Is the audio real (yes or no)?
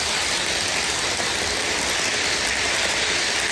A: yes